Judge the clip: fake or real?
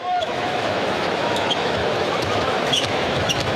fake